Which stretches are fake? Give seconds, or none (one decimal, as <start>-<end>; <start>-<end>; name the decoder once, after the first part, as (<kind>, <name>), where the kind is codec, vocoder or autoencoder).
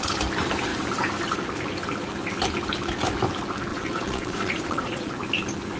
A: 3.7-5.1 (vocoder, Vocos)